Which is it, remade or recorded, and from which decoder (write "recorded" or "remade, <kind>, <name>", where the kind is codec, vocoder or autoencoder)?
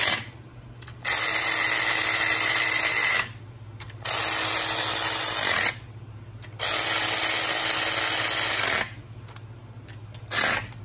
recorded